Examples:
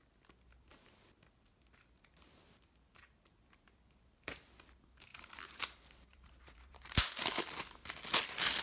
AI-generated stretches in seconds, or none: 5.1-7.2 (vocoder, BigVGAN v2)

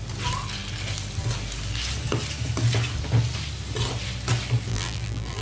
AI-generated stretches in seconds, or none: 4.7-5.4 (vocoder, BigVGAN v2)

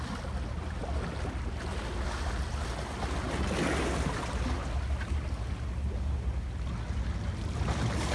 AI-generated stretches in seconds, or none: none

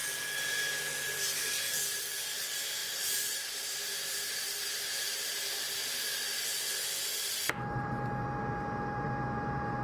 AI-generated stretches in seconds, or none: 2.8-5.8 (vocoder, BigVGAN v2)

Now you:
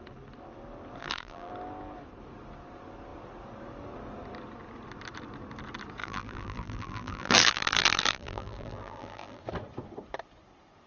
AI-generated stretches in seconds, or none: 1.0-1.5 (vocoder, BigVGAN v2); 6.0-9.4